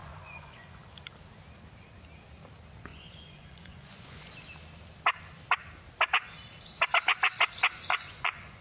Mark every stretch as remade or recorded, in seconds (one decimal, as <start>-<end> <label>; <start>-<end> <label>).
0.0-0.8 remade; 0.8-2.9 recorded; 2.9-4.3 remade; 4.3-7.9 recorded; 7.9-8.6 remade